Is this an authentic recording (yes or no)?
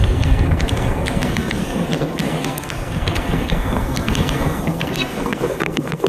no